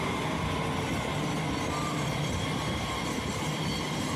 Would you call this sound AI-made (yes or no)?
no